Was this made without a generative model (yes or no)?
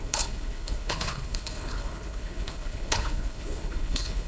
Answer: no